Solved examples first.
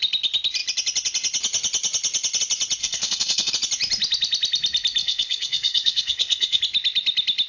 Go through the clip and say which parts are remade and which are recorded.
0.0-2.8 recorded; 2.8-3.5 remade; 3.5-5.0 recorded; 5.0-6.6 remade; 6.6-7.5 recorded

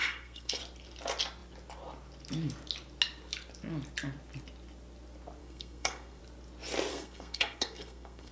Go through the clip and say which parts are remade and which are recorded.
0.0-0.6 remade; 0.6-5.4 recorded; 5.4-6.2 remade; 6.2-6.9 recorded; 6.9-8.3 remade

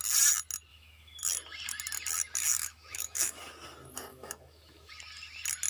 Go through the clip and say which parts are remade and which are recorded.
0.0-0.7 recorded; 0.7-1.2 remade; 1.2-2.5 recorded; 2.5-3.4 remade; 3.4-4.1 recorded; 4.1-4.9 remade; 4.9-5.7 recorded